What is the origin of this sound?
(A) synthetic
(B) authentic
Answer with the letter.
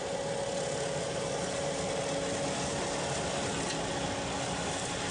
B